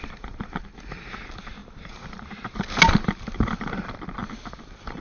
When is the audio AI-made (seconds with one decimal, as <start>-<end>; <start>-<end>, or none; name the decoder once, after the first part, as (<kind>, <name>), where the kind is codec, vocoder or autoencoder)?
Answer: none